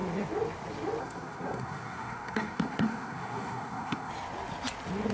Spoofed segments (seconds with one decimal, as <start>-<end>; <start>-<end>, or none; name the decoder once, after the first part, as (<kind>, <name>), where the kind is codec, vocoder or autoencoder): 1.0-4.1 (codec, SNAC)